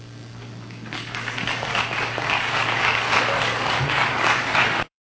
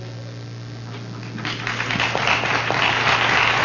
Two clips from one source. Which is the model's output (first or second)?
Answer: first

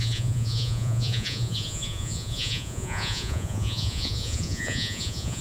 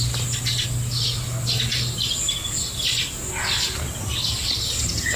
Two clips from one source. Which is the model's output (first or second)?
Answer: first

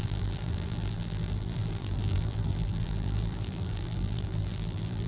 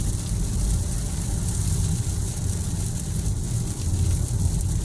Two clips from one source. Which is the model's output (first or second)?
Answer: first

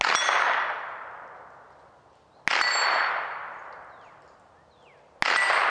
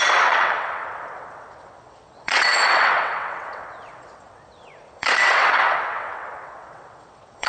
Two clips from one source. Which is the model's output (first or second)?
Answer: second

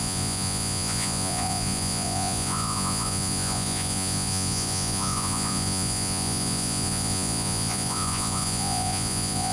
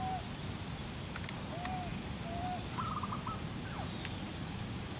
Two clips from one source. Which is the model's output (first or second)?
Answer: first